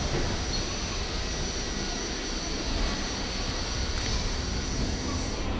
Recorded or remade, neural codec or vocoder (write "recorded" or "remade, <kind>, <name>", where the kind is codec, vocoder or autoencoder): recorded